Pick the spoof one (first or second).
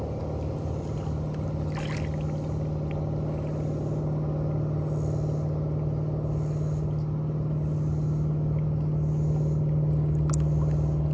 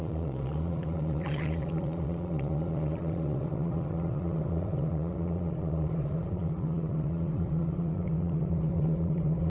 second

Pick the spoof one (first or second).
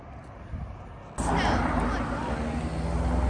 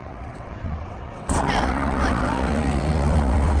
second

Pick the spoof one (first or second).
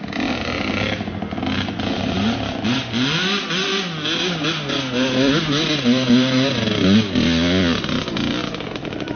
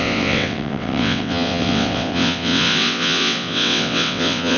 second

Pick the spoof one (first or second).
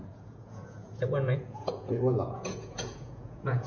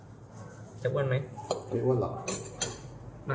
first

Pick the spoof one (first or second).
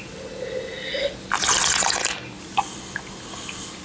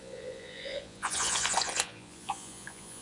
second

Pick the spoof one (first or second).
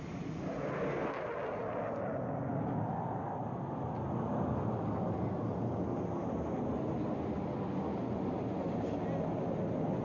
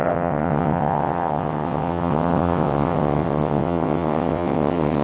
second